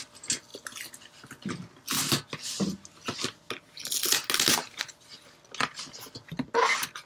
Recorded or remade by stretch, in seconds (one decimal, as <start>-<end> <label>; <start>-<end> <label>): 0.0-7.1 recorded